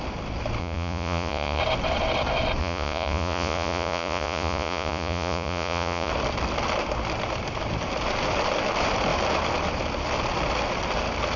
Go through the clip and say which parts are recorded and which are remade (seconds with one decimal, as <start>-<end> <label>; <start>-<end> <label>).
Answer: 0.0-0.6 recorded; 0.6-1.6 remade; 1.6-2.6 recorded; 2.6-6.1 remade; 6.1-11.4 recorded